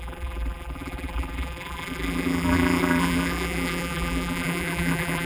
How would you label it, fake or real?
fake